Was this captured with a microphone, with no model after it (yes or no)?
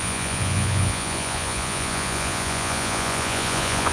no